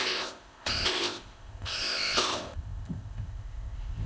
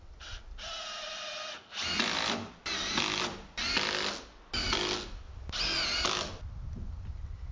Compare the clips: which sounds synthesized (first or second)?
first